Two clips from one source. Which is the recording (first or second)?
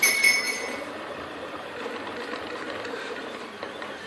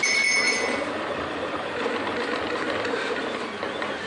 second